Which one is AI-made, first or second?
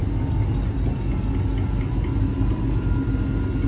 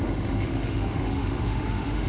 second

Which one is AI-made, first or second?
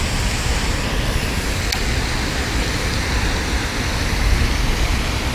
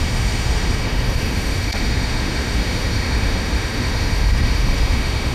second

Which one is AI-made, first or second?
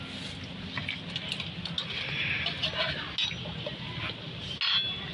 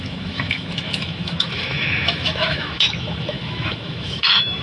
second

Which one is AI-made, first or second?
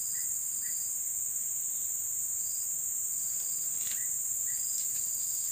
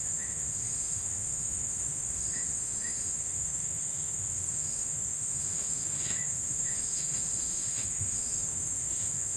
second